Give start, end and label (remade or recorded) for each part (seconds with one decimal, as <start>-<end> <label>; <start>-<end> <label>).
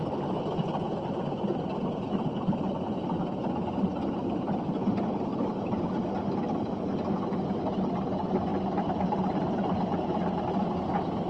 0.0-11.3 recorded